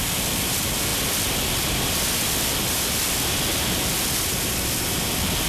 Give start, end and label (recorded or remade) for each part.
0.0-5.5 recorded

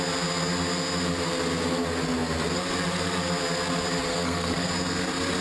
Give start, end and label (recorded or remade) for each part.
0.0-4.1 recorded; 4.1-4.7 remade; 4.7-5.4 recorded

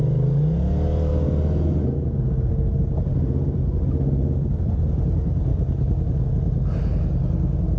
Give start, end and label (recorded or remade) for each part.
0.0-5.5 recorded; 5.5-6.3 remade; 6.3-7.8 recorded

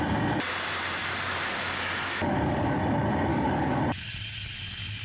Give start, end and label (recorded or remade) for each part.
0.0-1.0 recorded; 1.0-2.8 remade; 2.8-3.3 recorded; 3.3-3.8 remade; 3.8-5.0 recorded

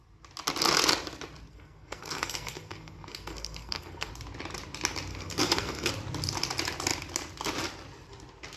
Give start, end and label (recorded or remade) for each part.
0.0-1.5 recorded; 1.5-4.1 remade; 4.1-5.1 recorded; 5.1-5.9 remade; 5.9-8.6 recorded